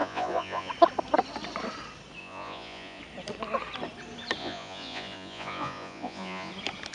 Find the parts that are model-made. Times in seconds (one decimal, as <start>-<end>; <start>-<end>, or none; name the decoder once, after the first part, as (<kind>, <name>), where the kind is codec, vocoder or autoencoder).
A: 0.0-0.7 (vocoder, Vocos); 2.2-3.0; 4.4-6.5